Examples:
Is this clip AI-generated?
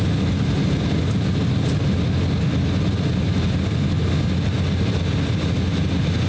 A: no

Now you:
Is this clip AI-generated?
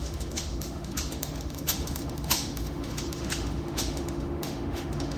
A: yes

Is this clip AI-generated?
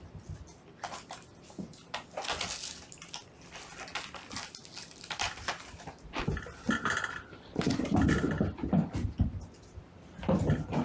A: no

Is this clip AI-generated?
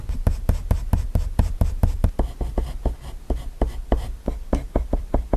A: no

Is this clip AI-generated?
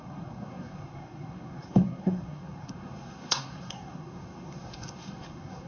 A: yes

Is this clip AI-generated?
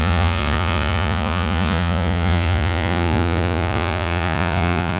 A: yes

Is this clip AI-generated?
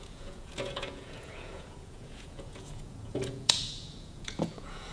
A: yes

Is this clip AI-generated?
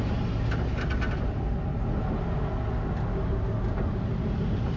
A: no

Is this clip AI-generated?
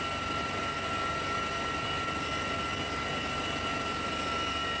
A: no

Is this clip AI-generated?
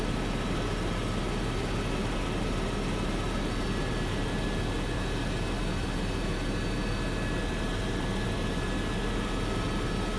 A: no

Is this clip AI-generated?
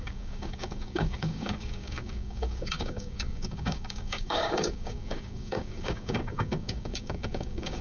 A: yes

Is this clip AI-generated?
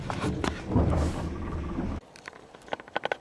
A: no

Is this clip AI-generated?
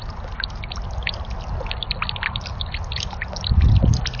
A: no